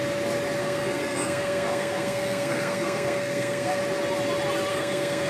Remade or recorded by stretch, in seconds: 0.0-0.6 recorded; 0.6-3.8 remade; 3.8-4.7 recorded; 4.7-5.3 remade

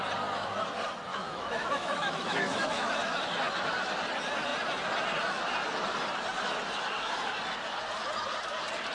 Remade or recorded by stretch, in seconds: 0.0-1.1 recorded; 1.1-2.9 remade; 2.9-8.9 recorded

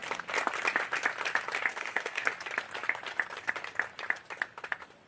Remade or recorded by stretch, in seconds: 0.0-1.7 recorded; 1.7-2.3 remade; 2.3-5.1 recorded

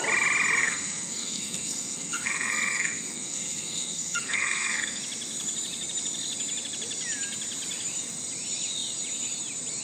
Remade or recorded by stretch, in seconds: 0.0-0.6 recorded; 0.6-5.0 remade; 5.0-9.8 recorded